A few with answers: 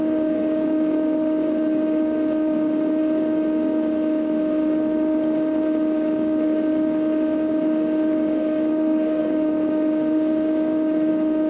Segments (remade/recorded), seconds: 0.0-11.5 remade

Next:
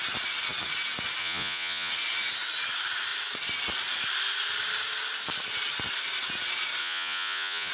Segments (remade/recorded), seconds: 0.0-1.2 recorded; 1.2-1.9 remade; 1.9-6.8 recorded; 6.8-7.7 remade